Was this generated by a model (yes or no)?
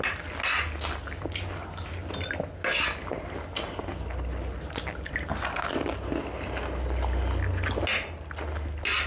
no